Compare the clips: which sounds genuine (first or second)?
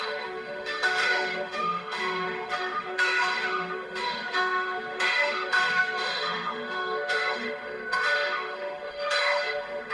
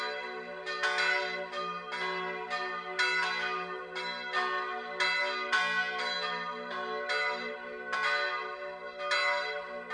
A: second